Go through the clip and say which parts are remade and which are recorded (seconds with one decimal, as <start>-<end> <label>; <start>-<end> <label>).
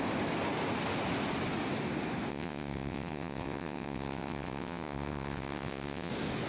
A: 0.0-2.3 recorded; 2.3-6.1 remade; 6.1-6.5 recorded